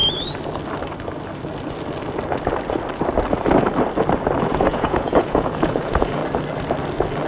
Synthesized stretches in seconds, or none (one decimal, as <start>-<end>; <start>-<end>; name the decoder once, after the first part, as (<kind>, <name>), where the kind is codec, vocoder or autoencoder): 4.4-6.2 (vocoder, Vocos)